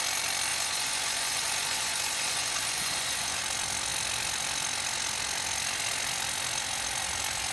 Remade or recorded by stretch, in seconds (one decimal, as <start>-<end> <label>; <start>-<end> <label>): 0.0-0.5 recorded; 0.5-3.4 remade; 3.4-7.5 recorded